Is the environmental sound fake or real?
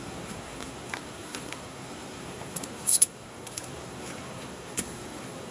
fake